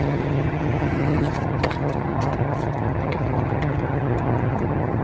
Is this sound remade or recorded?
remade